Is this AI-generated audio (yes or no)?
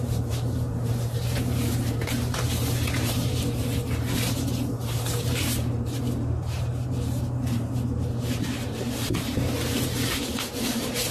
yes